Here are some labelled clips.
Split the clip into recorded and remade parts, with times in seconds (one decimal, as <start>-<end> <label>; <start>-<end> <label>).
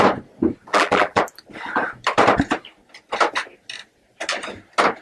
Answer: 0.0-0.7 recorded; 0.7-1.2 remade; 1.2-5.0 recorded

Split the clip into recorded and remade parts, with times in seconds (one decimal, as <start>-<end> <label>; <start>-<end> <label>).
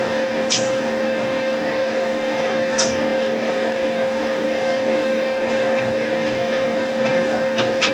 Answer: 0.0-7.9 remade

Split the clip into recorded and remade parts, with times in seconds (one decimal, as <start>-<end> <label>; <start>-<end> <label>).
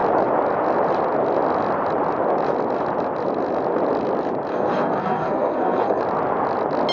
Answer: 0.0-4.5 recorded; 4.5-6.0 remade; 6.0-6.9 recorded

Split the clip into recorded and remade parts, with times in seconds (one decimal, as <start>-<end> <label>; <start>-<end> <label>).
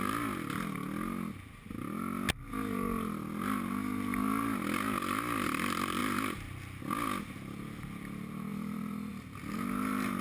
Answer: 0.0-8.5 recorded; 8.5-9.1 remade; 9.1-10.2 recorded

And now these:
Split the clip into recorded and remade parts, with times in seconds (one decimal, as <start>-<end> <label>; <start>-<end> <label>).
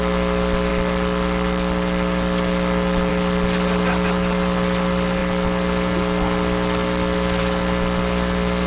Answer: 0.0-8.7 recorded